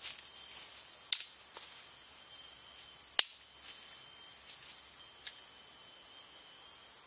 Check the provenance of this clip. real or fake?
real